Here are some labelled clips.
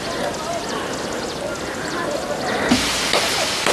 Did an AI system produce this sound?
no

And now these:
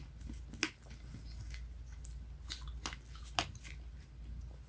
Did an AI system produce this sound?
no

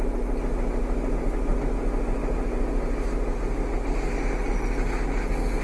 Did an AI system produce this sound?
no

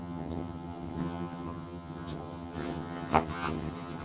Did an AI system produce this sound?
yes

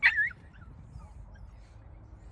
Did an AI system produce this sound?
no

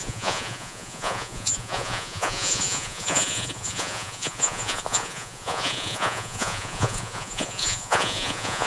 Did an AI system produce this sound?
yes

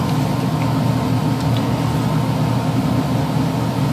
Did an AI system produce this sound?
no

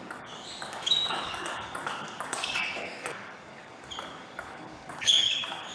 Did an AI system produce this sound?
yes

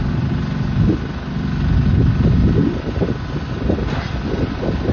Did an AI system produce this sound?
no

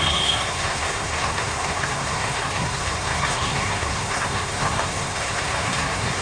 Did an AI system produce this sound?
yes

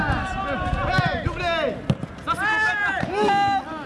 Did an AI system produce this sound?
no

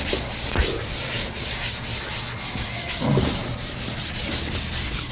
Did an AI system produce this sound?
no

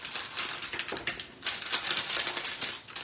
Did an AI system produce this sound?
no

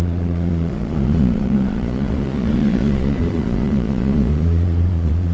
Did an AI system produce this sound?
yes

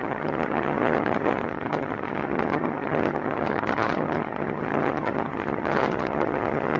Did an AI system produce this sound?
yes